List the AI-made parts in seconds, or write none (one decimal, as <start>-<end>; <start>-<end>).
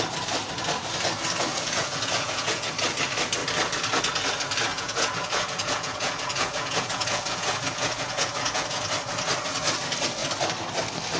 1.5-2.7; 4.7-8.8